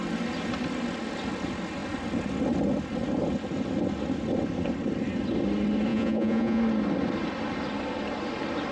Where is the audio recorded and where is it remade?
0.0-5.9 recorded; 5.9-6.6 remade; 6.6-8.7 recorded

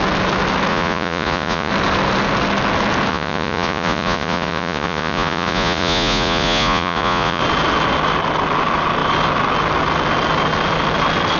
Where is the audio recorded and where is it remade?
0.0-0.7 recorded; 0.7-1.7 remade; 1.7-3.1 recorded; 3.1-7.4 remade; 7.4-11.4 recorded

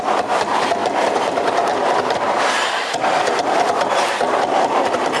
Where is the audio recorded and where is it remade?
0.0-5.2 recorded

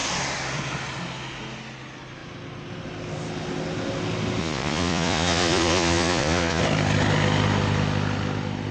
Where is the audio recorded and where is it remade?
0.0-4.4 recorded; 4.4-6.6 remade; 6.6-8.7 recorded

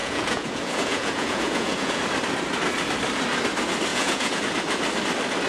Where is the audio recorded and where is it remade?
0.0-2.0 remade; 2.0-3.9 recorded; 3.9-4.4 remade; 4.4-5.5 recorded